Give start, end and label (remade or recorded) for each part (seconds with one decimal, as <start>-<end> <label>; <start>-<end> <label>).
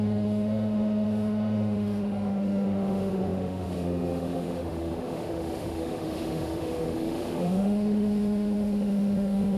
0.0-9.6 remade